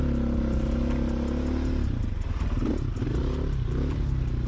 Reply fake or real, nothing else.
real